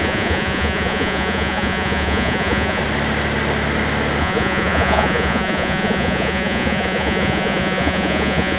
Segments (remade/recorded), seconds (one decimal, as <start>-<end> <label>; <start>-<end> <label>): 0.0-2.8 remade; 2.8-4.2 recorded; 4.2-8.6 remade